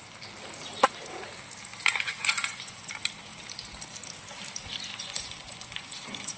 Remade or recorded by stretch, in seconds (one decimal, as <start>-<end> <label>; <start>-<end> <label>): 0.0-1.7 recorded; 1.7-2.9 remade; 2.9-4.9 recorded; 4.9-6.4 remade

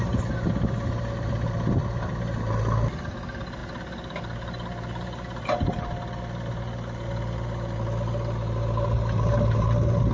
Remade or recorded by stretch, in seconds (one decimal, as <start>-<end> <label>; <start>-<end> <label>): 0.0-10.1 recorded

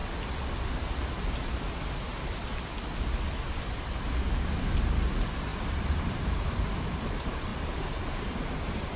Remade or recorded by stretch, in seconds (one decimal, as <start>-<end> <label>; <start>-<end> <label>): 0.0-4.9 recorded; 4.9-7.5 remade; 7.5-8.6 recorded; 8.6-9.0 remade